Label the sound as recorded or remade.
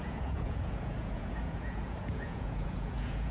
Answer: remade